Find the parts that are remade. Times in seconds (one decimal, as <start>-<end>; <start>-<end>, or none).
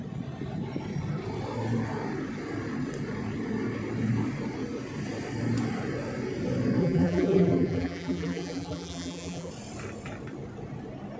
6.8-9.5